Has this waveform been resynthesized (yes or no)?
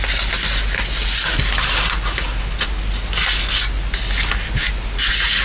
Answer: no